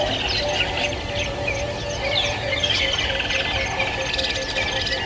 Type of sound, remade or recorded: recorded